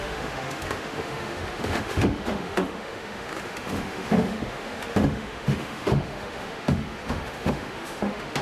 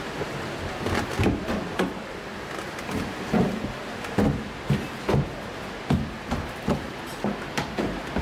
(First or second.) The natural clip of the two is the second